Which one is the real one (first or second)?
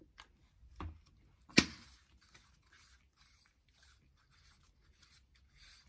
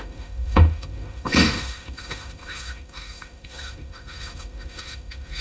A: first